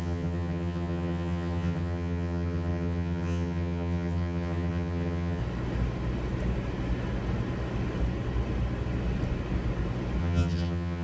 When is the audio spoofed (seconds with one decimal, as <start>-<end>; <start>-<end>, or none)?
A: 0.0-5.4; 10.2-11.0